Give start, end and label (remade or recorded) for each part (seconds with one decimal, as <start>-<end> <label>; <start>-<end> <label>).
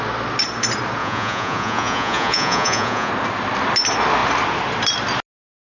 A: 0.0-1.0 recorded; 1.0-3.1 remade; 3.1-5.6 recorded